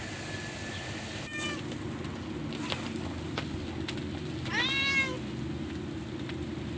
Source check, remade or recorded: recorded